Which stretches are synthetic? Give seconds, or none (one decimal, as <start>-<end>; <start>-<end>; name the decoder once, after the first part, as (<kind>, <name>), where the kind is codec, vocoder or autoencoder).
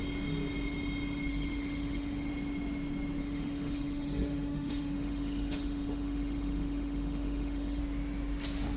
1.3-2.3 (autoencoder, DAC-VAE); 3.2-7.8